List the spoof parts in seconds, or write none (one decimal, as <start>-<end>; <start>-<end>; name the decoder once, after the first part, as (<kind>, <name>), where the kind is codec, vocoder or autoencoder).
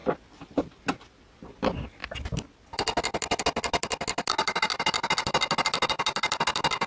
none